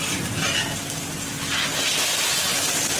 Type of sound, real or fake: real